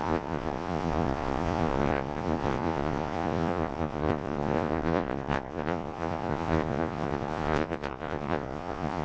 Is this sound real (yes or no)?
no